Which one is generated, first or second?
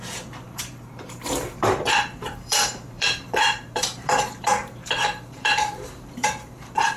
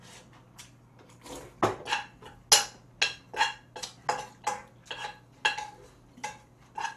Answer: first